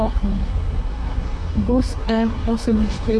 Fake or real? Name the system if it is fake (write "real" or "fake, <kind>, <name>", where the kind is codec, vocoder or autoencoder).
fake, codec, SNAC